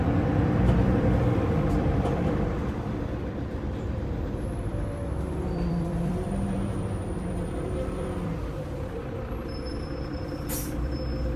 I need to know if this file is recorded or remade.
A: remade